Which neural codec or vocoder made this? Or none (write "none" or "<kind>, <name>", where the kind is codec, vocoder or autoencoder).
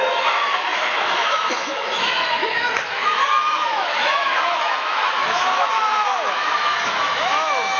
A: autoencoder, DAC-VAE